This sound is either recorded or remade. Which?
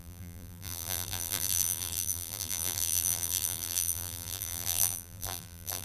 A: remade